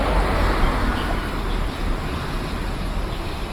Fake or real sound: real